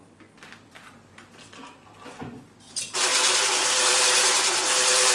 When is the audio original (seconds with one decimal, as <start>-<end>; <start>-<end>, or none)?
none